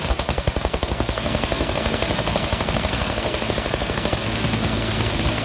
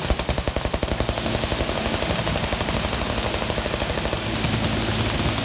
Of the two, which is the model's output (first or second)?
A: first